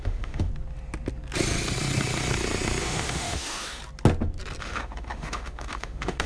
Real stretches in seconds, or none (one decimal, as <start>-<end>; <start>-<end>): 0.5-2.8; 3.8-4.6